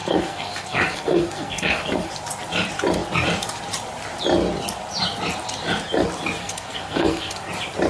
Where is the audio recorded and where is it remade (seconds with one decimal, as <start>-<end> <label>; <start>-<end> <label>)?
0.0-2.1 remade; 2.1-6.4 recorded; 6.4-7.5 remade; 7.5-7.9 recorded